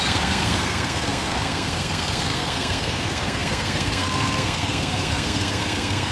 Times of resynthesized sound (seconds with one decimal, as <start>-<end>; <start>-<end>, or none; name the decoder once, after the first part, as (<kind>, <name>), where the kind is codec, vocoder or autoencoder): 0.0-6.1 (codec, SNAC)